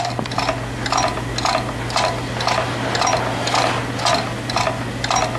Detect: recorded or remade recorded